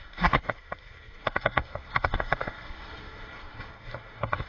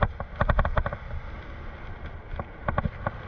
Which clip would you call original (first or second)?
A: second